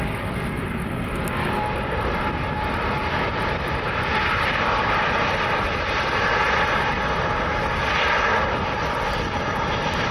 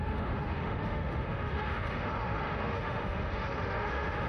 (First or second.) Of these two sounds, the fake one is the second